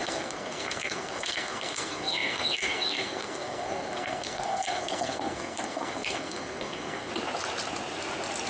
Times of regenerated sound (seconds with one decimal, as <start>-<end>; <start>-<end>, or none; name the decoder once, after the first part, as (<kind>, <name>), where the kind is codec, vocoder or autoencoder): 0.0-7.1 (codec, SNAC)